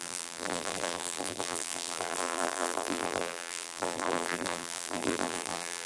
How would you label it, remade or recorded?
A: remade